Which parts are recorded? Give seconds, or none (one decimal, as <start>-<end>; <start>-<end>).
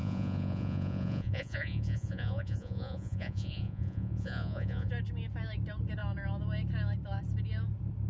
4.9-8.1